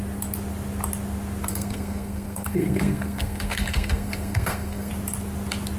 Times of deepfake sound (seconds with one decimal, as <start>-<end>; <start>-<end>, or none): 1.5-4.9